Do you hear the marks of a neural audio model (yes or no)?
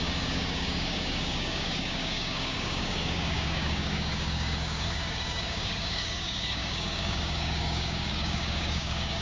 yes